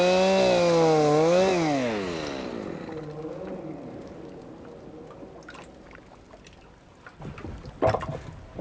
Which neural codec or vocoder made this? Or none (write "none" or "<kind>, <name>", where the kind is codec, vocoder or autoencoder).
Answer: none